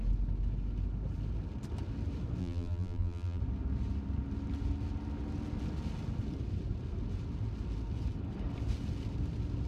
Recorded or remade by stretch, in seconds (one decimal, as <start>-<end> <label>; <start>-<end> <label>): 0.0-2.4 recorded; 2.4-3.4 remade; 3.4-9.7 recorded